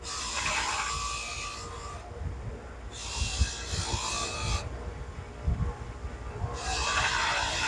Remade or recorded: recorded